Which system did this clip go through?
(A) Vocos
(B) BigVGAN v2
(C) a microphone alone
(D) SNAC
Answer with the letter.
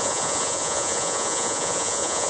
A